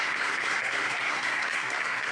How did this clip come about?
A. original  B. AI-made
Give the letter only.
B